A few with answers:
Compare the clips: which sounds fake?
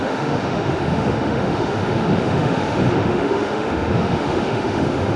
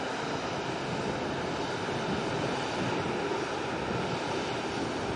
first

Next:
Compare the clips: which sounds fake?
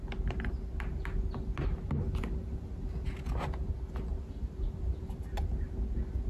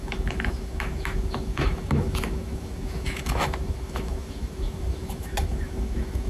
second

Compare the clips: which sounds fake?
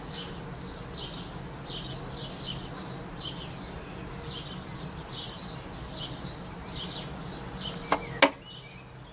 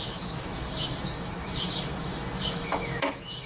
second